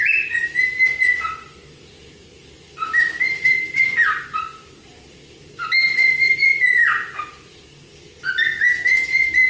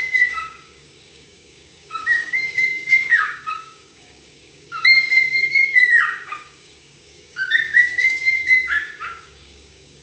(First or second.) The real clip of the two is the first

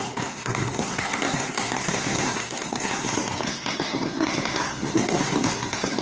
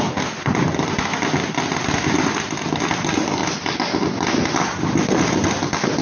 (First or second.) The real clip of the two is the second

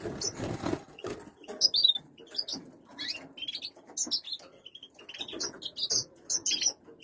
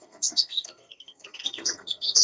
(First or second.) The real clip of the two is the first